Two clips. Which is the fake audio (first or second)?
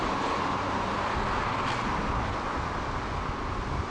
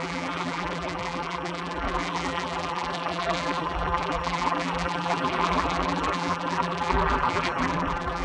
second